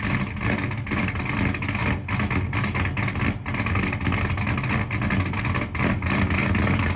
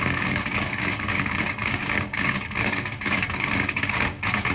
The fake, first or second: second